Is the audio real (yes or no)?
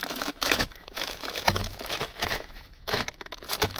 no